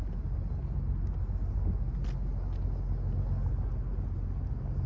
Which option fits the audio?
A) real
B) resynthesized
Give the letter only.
A